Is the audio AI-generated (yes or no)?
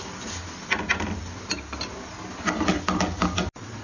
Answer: no